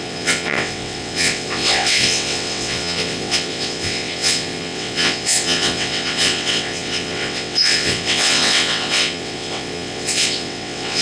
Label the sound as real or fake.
fake